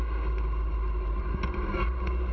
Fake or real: real